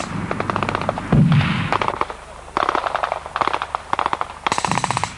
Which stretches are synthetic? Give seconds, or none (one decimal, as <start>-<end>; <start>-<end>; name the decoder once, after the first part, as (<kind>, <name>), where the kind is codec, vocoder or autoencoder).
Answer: none